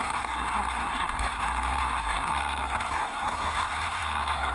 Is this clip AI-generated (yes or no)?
yes